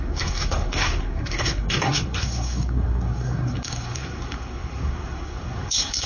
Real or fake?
fake